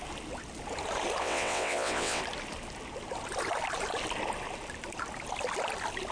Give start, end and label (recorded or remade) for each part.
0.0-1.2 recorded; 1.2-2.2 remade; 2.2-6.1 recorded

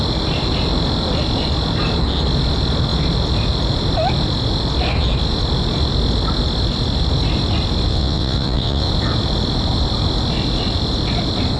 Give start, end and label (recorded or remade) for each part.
0.0-7.9 recorded; 7.9-8.9 remade; 8.9-11.6 recorded

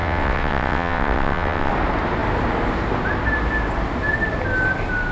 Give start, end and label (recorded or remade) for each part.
0.0-1.7 remade; 1.7-5.1 recorded

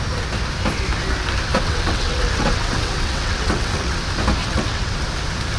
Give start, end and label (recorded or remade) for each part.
0.0-1.5 recorded; 1.5-4.0 remade; 4.0-4.4 recorded; 4.4-5.0 remade; 5.0-5.6 recorded